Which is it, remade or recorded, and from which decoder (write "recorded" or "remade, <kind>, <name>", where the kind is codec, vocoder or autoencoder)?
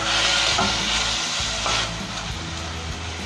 recorded